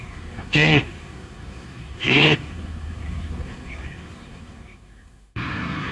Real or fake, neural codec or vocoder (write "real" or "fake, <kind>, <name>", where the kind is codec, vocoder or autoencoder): fake, codec, SNAC